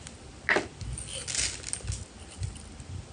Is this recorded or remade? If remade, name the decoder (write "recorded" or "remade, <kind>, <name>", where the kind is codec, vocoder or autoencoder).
recorded